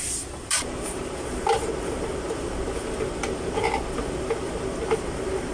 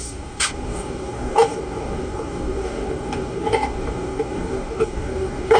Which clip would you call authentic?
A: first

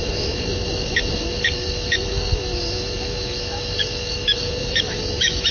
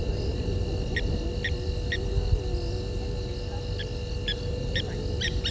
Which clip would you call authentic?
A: second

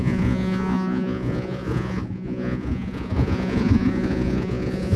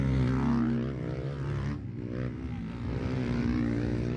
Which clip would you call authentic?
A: second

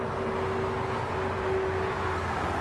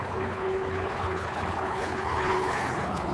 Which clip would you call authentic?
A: first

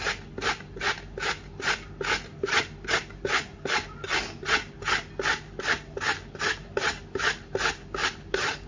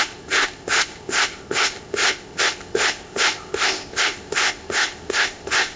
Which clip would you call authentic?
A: first